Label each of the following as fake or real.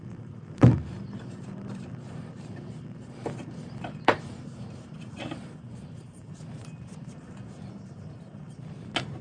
fake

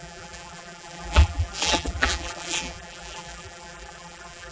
fake